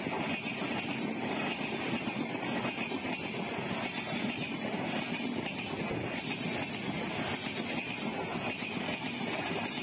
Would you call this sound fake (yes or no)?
no